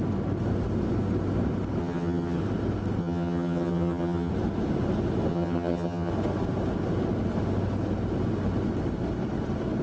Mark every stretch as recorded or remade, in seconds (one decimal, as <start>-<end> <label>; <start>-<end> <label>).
0.0-1.8 recorded; 1.8-2.4 remade; 2.4-3.0 recorded; 3.0-4.3 remade; 4.3-5.3 recorded; 5.3-6.1 remade; 6.1-9.8 recorded